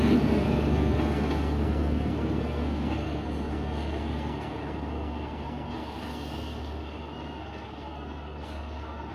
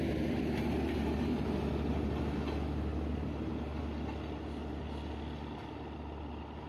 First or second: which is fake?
first